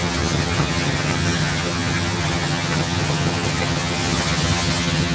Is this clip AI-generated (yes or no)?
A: yes